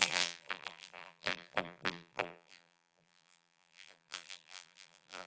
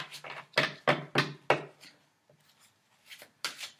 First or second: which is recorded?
second